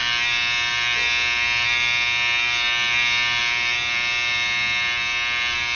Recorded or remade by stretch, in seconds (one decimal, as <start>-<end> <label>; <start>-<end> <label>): 0.0-5.7 recorded